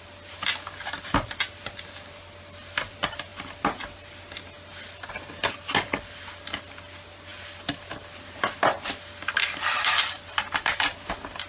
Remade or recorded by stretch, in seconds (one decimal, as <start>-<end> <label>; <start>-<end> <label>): 0.0-11.5 recorded